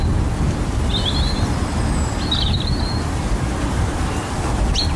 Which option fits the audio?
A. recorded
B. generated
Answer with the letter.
A